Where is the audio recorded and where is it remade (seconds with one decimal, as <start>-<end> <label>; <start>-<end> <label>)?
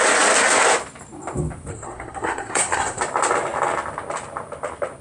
0.0-1.7 recorded; 1.7-3.0 remade; 3.0-5.0 recorded